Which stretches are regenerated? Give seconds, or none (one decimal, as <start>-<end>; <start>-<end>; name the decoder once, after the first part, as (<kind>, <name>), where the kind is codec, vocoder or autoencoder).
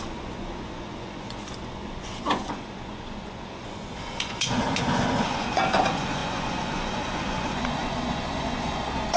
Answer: 0.0-9.2 (vocoder, Vocos)